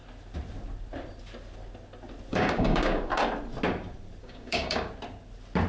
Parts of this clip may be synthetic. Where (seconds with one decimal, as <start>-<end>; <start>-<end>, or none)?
2.3-3.2; 4.2-4.9